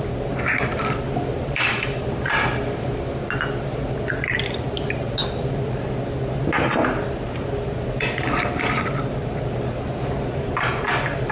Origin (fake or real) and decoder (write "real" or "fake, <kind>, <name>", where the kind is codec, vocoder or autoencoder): real